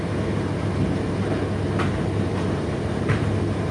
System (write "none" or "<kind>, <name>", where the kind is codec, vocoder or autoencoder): vocoder, BigVGAN v2